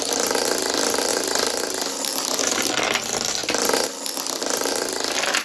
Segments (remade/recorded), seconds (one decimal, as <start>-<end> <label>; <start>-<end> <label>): 0.0-1.1 recorded; 1.1-2.7 remade; 2.7-3.4 recorded; 3.4-3.9 remade; 3.9-5.4 recorded